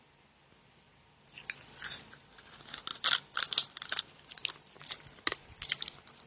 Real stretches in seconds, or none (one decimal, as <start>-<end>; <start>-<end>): 0.0-6.3